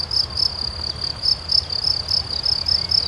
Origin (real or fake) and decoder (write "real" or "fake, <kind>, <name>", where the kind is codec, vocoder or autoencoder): real